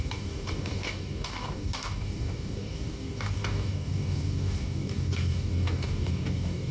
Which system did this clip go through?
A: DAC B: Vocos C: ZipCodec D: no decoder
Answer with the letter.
A